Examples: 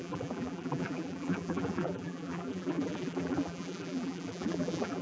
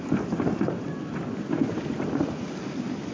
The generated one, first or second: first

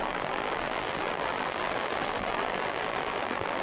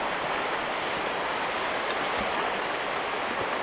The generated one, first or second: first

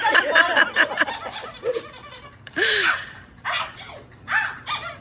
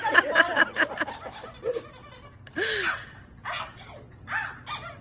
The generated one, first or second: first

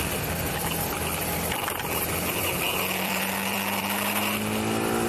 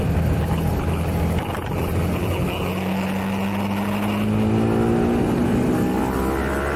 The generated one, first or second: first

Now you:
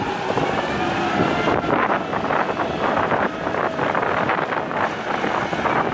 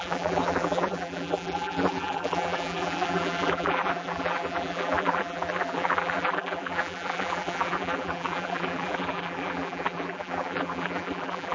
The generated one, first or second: second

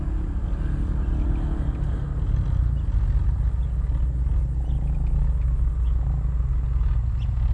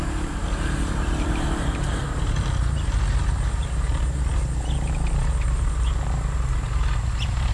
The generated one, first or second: second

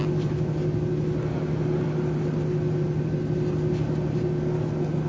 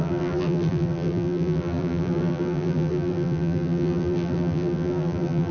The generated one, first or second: second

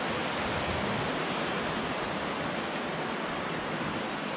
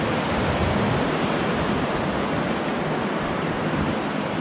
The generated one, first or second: first